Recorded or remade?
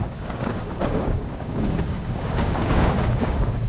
remade